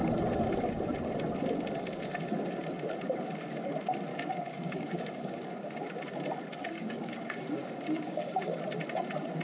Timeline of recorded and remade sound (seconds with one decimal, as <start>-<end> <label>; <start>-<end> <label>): 0.0-4.1 recorded; 4.1-5.8 remade; 5.8-6.6 recorded; 6.6-8.5 remade; 8.5-9.4 recorded

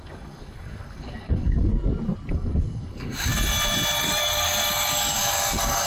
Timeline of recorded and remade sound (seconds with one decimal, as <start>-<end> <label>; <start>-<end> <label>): 0.0-1.7 remade; 1.7-2.3 recorded; 2.3-3.3 remade; 3.3-4.0 recorded; 4.0-5.9 remade

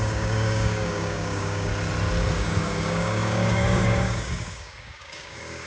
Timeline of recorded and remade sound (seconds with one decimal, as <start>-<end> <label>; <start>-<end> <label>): 0.0-1.7 remade; 1.7-2.3 recorded; 2.3-5.7 remade

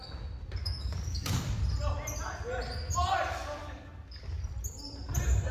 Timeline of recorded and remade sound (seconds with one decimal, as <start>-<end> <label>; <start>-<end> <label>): 0.0-0.6 recorded; 0.6-1.6 remade; 1.6-3.3 recorded; 3.3-4.4 remade; 4.4-5.5 recorded

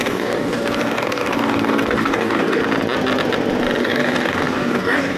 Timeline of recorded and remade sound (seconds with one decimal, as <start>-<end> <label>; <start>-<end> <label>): 0.0-2.6 remade; 2.6-3.8 recorded; 3.8-5.2 remade

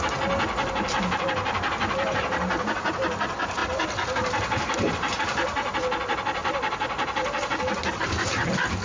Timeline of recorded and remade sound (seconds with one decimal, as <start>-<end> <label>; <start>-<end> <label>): 0.0-8.8 recorded

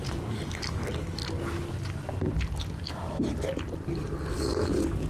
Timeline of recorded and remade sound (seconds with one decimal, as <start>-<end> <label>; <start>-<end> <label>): 0.0-1.2 remade; 1.2-4.3 recorded; 4.3-5.1 remade

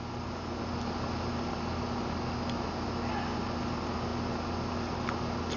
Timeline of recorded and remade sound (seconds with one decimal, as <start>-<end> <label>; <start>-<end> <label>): 0.0-5.6 recorded